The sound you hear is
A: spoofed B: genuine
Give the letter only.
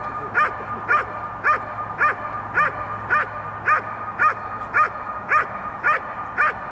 B